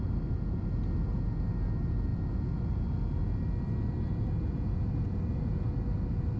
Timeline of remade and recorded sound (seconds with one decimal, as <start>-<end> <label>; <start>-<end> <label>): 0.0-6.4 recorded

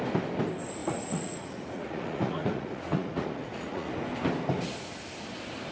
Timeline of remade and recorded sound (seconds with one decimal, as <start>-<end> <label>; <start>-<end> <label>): 0.0-0.8 recorded; 0.8-3.9 remade; 3.9-5.7 recorded

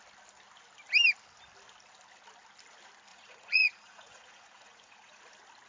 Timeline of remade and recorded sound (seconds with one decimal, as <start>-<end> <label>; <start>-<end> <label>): 0.0-3.1 recorded; 3.1-5.2 remade; 5.2-5.7 recorded

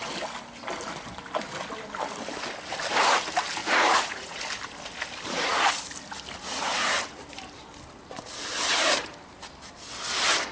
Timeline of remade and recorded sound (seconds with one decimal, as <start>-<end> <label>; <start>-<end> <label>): 0.0-3.6 recorded; 3.6-4.4 remade; 4.4-10.5 recorded

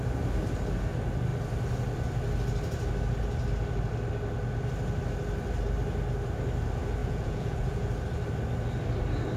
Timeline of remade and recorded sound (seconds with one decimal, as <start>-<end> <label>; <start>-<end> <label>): 0.0-7.0 recorded; 7.0-7.9 remade; 7.9-9.4 recorded